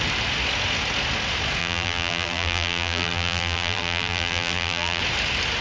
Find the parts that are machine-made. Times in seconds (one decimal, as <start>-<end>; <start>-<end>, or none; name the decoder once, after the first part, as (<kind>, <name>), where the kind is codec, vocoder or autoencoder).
1.6-5.0 (vocoder, BigVGAN v2)